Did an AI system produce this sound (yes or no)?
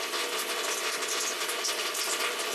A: no